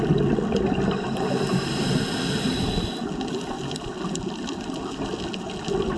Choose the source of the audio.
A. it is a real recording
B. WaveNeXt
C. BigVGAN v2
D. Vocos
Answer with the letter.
A